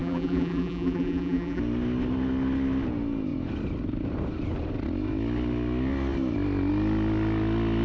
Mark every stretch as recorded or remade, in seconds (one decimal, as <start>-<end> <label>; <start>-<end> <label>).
0.0-1.6 remade; 1.6-7.8 recorded